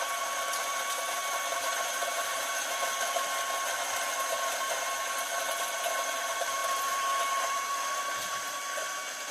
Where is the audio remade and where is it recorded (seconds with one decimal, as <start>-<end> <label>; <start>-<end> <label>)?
0.0-1.6 recorded; 1.6-2.5 remade; 2.5-9.3 recorded